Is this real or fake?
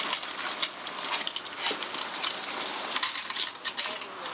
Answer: real